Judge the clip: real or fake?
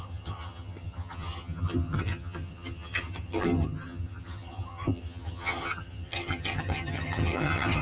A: fake